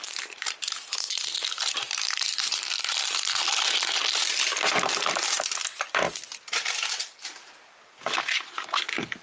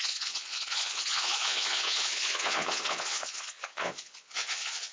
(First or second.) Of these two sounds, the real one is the first